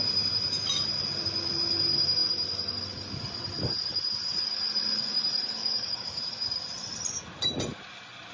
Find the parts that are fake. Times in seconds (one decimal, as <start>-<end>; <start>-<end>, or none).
5.6-6.2